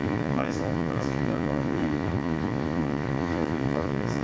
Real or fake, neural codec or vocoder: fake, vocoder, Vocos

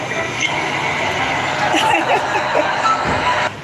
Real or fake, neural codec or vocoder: real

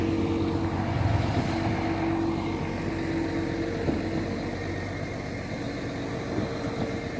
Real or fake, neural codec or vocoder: real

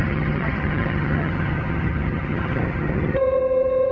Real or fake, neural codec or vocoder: fake, vocoder, HiFi-GAN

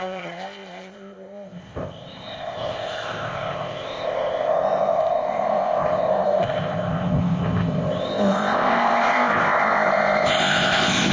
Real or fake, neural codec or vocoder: fake, codec, ZipCodec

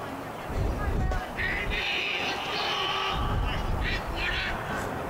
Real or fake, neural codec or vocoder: real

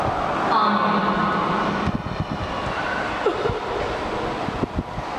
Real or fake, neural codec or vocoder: real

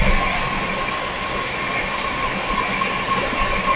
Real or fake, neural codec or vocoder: real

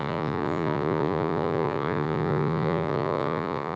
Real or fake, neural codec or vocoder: fake, vocoder, Vocos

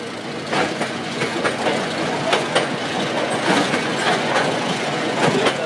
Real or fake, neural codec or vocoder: fake, vocoder, Vocos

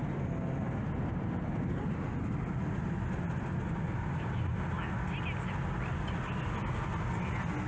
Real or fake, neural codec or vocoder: real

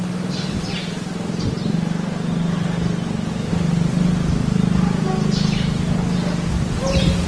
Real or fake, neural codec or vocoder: real